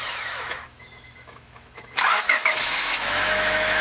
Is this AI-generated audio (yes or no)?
yes